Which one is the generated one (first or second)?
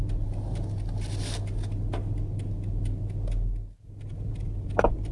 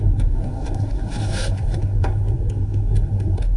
second